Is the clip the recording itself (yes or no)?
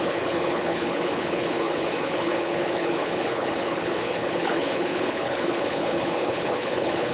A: no